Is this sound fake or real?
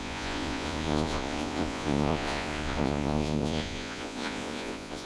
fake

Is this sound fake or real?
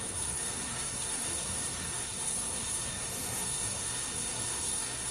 fake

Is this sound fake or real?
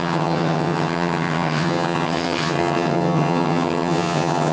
fake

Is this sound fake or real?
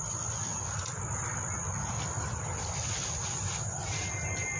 real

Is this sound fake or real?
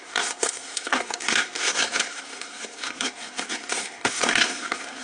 fake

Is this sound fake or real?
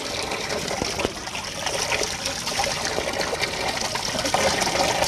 real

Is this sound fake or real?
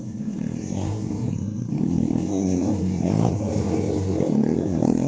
fake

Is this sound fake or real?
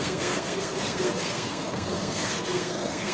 fake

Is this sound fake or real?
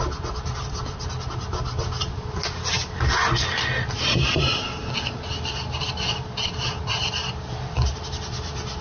real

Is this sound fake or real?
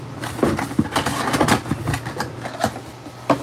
real